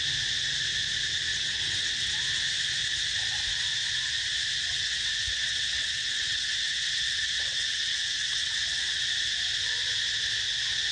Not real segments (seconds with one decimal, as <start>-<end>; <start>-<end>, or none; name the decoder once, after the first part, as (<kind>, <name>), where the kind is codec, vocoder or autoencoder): 1.3-2.1 (vocoder, WaveNeXt); 4.7-9.0